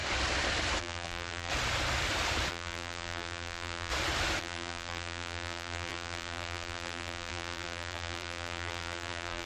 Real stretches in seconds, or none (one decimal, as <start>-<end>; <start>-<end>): 0.0-0.8; 1.5-2.5; 3.9-4.4

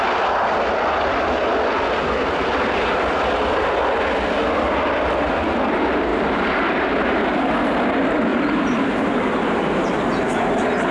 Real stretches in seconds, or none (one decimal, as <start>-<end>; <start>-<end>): 0.0-6.1; 7.5-8.3

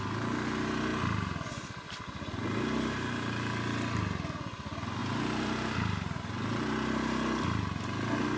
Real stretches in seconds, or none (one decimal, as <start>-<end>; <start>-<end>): 0.0-5.0; 6.2-8.4